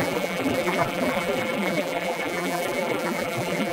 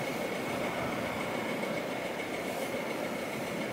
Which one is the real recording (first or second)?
second